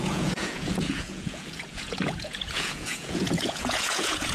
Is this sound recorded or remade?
remade